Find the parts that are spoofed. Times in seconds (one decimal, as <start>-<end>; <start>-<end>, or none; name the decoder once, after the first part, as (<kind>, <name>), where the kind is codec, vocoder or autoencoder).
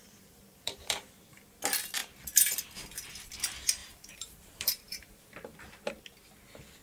0.0-1.0 (vocoder, BigVGAN v2); 3.8-5.3